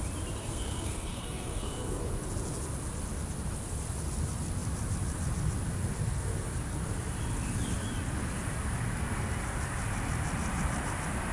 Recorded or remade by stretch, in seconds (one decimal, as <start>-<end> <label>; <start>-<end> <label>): 0.0-0.4 recorded; 0.4-2.0 remade; 2.0-11.3 recorded